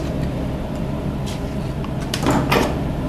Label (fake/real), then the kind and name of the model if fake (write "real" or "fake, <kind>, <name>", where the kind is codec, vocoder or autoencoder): fake, vocoder, BigVGAN v2